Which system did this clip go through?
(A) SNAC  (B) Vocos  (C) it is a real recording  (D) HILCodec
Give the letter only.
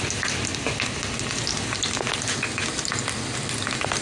C